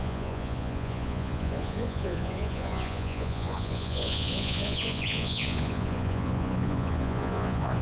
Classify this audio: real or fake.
fake